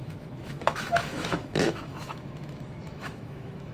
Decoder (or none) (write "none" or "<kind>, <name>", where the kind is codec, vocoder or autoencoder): autoencoder, DAC-VAE